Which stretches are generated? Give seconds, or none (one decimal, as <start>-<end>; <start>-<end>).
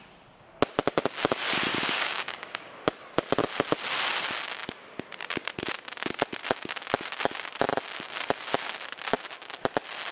1.7-2.7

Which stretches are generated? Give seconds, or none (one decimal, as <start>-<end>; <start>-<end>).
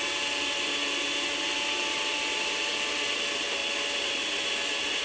none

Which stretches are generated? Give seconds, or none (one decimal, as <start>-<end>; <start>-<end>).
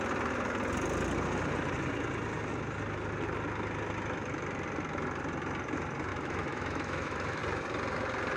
6.1-7.4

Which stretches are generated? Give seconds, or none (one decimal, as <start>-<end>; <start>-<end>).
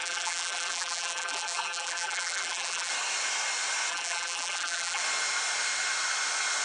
0.0-2.9; 3.9-5.0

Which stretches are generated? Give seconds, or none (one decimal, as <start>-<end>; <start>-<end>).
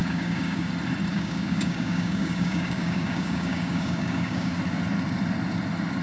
0.0-0.7; 1.1-4.6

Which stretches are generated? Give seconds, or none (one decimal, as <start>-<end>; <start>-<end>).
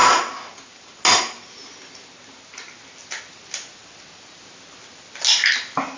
none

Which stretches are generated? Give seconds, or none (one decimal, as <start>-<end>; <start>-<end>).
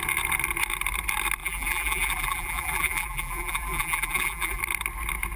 1.4-4.6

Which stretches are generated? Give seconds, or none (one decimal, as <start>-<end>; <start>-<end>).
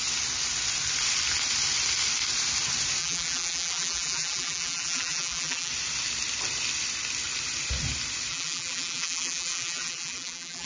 3.0-5.7; 8.3-10.7